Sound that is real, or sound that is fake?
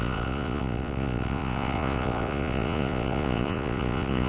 fake